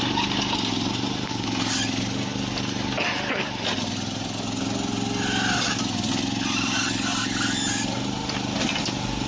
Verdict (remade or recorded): recorded